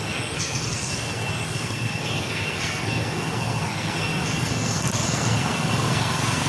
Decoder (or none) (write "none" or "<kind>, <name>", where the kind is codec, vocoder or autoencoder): codec, SNAC